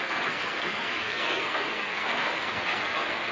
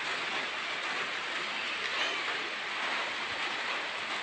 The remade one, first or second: first